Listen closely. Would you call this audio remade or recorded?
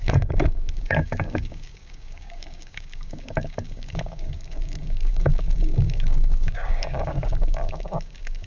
remade